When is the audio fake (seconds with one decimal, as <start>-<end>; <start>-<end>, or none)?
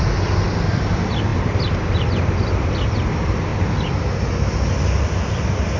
0.0-3.5; 5.0-5.8